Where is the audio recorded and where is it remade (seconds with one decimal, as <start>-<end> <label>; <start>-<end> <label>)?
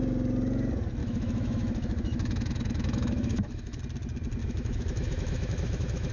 0.0-1.0 recorded; 1.0-3.8 remade; 3.8-4.4 recorded; 4.4-6.1 remade